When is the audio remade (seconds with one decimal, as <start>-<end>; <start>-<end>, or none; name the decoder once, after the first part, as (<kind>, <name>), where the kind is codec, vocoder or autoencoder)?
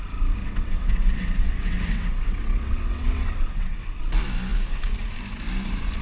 0.4-4.0 (vocoder, WaveNeXt)